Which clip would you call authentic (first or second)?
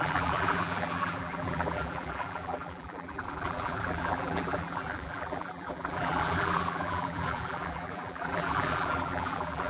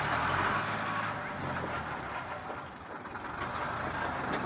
second